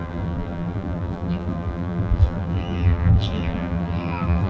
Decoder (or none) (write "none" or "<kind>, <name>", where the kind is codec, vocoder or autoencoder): vocoder, BigVGAN v2